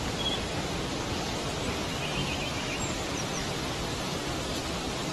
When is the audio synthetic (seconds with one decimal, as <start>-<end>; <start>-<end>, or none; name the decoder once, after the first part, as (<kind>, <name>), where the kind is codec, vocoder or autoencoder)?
0.9-1.6 (autoencoder, DAC-VAE); 2.2-2.8